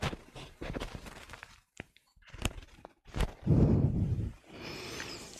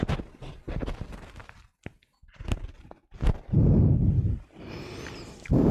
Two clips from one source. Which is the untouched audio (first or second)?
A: second